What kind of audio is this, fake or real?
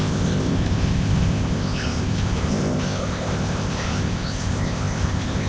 fake